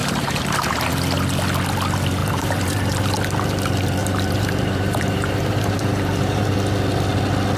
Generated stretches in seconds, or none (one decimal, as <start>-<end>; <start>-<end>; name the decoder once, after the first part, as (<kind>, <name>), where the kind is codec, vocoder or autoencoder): 0.0-0.9 (vocoder, BigVGAN v2); 2.2-3.1; 4.0-6.5